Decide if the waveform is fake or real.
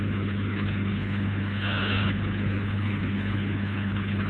fake